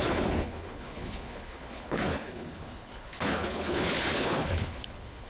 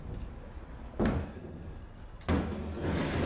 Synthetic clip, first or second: first